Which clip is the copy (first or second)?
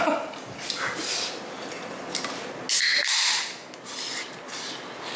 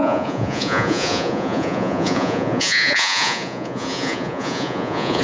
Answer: second